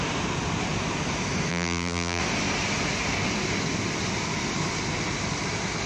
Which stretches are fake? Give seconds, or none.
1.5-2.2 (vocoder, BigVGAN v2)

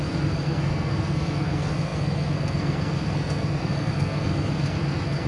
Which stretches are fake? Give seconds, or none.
0.0-5.3 (codec, SNAC)

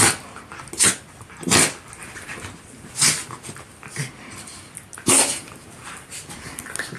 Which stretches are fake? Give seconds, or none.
none

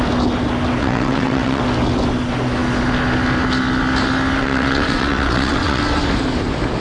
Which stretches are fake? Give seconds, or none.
0.8-1.6 (vocoder, WaveNeXt); 4.4-5.8

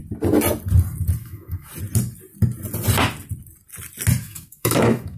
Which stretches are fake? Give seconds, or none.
1.2-1.7 (autoencoder, DAC-VAE); 4.2-5.2

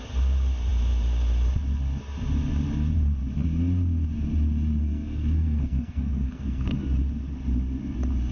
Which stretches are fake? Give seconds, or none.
4.8-6.8 (codec, SNAC)